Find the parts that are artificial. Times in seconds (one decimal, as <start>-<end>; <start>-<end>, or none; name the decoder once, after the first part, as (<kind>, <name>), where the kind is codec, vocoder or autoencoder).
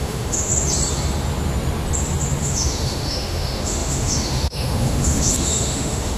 0.0-0.5 (autoencoder, DAC-VAE); 2.4-6.2